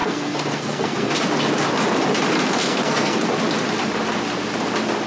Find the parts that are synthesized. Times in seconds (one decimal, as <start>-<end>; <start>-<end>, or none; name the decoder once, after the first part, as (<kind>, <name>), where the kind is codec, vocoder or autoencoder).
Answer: 0.0-1.1 (codec, SNAC); 2.6-3.2